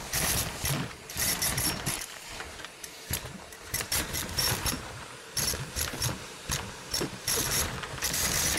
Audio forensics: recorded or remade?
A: remade